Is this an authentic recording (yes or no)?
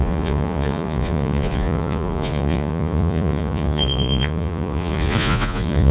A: no